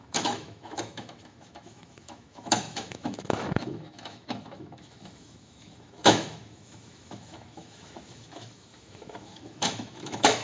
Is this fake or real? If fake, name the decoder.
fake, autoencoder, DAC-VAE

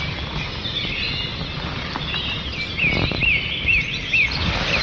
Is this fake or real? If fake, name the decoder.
real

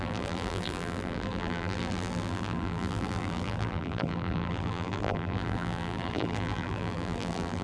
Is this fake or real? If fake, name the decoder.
fake, vocoder, BigVGAN v2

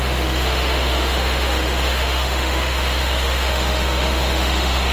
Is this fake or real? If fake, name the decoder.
fake, autoencoder, DAC-VAE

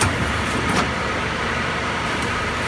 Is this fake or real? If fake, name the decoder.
fake, vocoder, BigVGAN v2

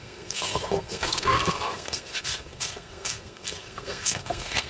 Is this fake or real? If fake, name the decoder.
fake, codec, SNAC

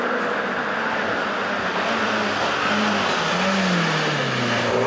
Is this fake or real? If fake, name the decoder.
real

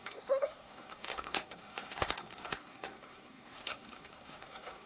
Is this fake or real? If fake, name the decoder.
fake, codec, SNAC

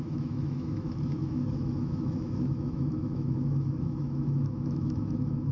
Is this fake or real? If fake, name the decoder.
fake, autoencoder, DAC-VAE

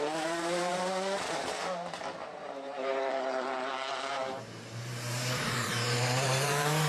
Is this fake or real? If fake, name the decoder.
fake, vocoder, BigVGAN v2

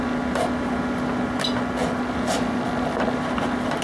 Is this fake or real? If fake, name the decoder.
real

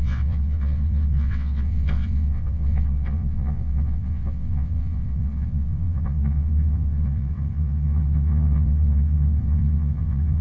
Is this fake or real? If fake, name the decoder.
fake, vocoder, WaveNeXt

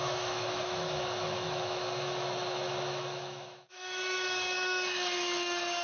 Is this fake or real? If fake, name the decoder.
fake, autoencoder, DAC-VAE